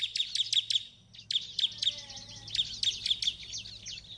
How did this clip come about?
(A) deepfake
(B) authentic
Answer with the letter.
B